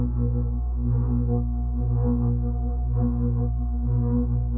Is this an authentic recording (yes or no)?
no